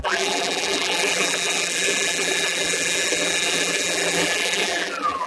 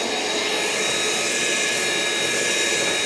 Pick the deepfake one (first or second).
first